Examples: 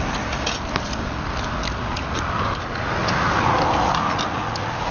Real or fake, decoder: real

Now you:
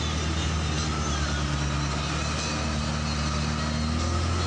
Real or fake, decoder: real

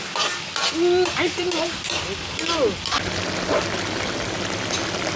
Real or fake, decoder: real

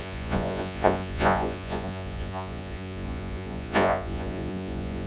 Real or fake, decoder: fake, vocoder, Vocos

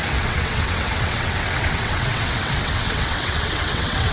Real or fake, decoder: fake, vocoder, WaveNeXt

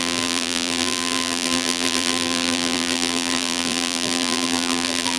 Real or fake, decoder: fake, vocoder, BigVGAN v2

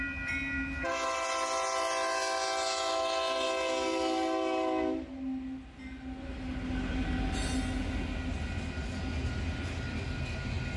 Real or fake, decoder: real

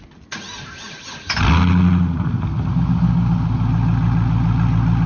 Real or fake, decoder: real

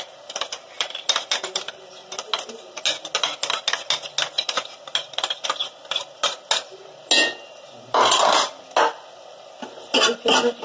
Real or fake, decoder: real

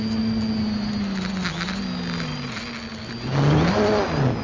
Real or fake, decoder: real